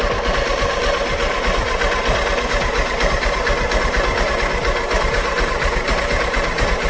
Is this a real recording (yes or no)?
yes